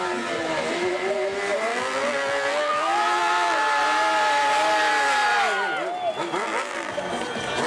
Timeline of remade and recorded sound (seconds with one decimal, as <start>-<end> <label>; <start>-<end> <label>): 0.0-1.7 recorded; 1.7-3.6 remade; 3.6-6.4 recorded; 6.4-6.9 remade; 6.9-7.7 recorded